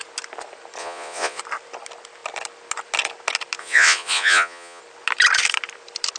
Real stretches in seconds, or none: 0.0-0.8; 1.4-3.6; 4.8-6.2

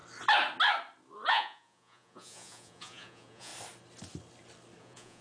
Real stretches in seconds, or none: 0.0-1.3; 3.5-4.8

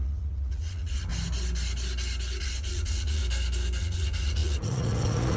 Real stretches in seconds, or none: 1.1-2.4; 3.2-3.8